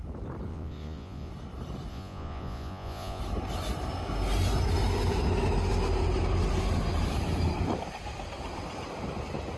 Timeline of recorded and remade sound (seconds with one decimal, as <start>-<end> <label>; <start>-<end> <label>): 0.0-0.5 recorded; 0.5-1.3 remade; 1.3-1.9 recorded; 1.9-3.2 remade; 3.2-9.6 recorded